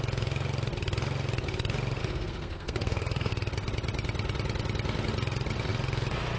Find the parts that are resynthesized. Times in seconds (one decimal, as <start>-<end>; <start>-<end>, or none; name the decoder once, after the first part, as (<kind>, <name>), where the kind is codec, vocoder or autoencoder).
2.0-3.3 (codec, SNAC)